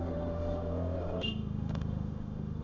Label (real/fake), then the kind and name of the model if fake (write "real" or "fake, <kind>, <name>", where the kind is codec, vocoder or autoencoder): fake, autoencoder, DAC-VAE